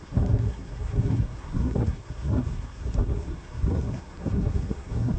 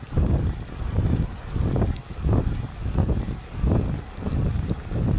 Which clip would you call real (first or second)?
second